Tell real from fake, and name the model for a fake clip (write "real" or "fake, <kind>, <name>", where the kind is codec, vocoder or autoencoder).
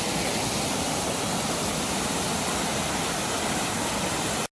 real